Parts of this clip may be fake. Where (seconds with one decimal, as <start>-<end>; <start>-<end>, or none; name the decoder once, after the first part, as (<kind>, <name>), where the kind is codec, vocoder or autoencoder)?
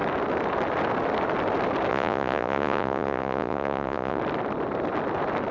1.9-4.2 (vocoder, Vocos)